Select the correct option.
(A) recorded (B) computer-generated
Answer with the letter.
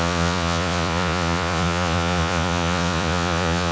B